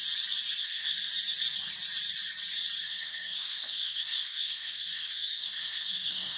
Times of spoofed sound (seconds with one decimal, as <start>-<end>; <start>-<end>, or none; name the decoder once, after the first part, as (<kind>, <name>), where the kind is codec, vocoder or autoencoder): 0.6-1.1 (codec, SNAC); 2.8-6.4